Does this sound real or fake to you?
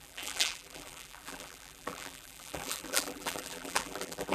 fake